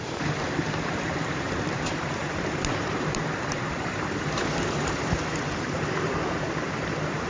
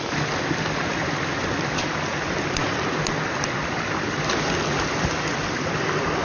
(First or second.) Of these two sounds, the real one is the second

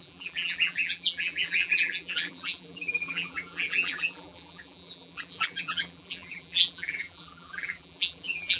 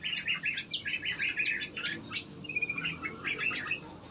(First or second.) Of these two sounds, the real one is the second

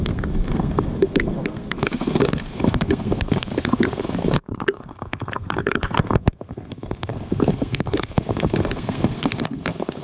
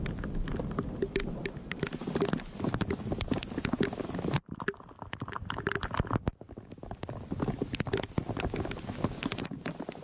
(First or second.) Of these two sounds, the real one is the second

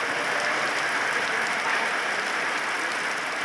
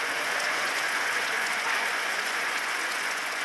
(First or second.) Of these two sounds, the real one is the first